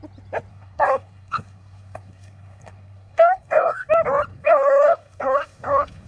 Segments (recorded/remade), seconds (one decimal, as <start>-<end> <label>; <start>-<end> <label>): 0.0-0.5 recorded; 0.5-3.9 remade; 3.9-4.3 recorded; 4.3-6.1 remade